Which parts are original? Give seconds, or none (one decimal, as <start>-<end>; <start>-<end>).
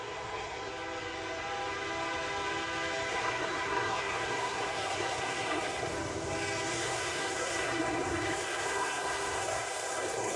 0.7-3.1; 5.9-6.7